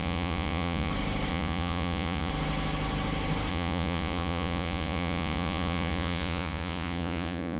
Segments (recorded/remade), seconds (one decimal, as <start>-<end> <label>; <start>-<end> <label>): 0.0-0.9 remade; 0.9-1.3 recorded; 1.3-2.3 remade; 2.3-3.5 recorded; 3.5-7.6 remade